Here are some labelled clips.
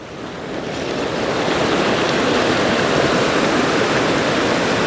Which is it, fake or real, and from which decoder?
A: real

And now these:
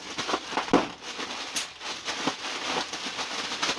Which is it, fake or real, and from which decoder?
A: real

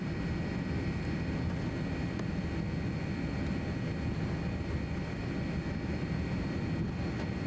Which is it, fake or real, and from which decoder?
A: real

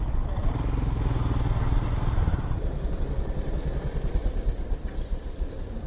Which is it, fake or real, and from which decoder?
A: real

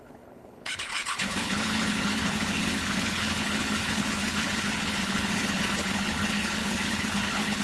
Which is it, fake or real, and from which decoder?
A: fake, codec, HILCodec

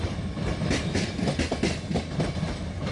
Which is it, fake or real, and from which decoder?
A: real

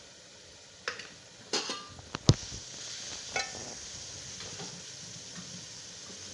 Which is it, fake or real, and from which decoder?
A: real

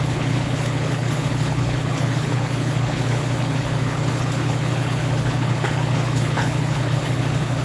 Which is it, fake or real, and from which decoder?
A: fake, codec, HILCodec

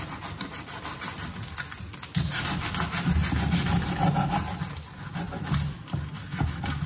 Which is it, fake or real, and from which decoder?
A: real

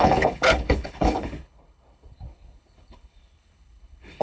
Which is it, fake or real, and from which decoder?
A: fake, codec, HILCodec